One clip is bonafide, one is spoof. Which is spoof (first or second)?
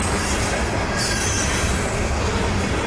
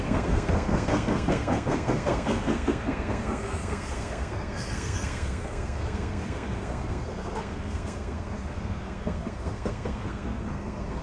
second